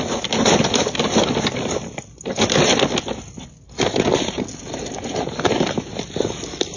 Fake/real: real